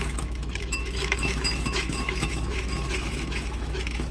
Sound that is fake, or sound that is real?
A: fake